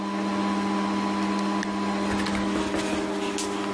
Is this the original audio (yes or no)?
yes